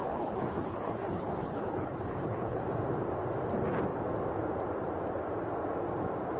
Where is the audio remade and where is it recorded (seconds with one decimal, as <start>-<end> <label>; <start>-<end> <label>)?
0.0-2.6 remade; 2.6-6.4 recorded